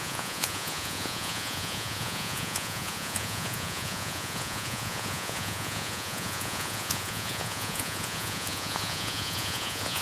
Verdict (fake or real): fake